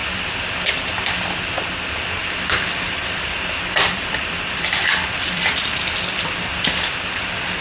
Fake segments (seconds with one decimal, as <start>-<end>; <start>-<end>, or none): 0.0-0.7; 2.2-5.8; 6.5-7.1